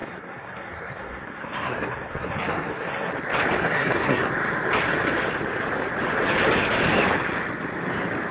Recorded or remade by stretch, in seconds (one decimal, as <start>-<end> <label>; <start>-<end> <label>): 0.0-3.1 remade; 3.1-3.6 recorded; 3.6-4.3 remade; 4.3-8.3 recorded